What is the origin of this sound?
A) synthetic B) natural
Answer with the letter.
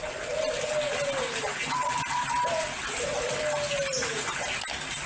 B